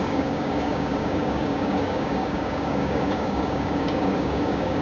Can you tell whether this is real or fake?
fake